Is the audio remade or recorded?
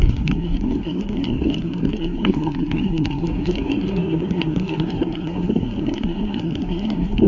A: remade